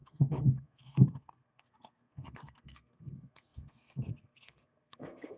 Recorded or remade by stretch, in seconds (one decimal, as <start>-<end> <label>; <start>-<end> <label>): 0.0-5.4 remade